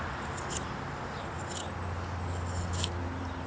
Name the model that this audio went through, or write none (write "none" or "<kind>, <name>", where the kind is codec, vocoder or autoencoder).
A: none